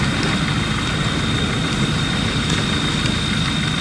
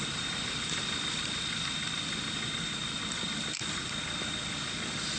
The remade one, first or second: second